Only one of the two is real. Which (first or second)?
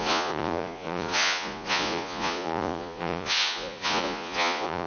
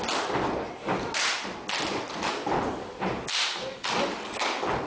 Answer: second